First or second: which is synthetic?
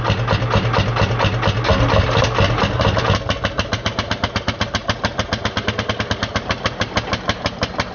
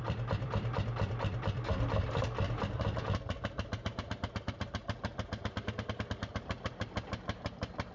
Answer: second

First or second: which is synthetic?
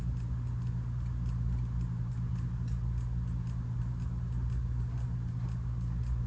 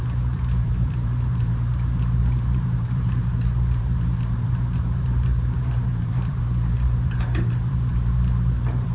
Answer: second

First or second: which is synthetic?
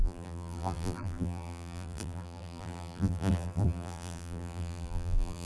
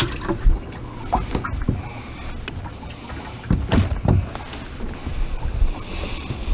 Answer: first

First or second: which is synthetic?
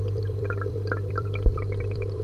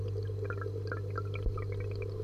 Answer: first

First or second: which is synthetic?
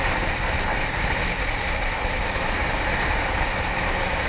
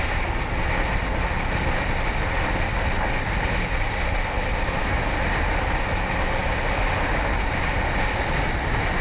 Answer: first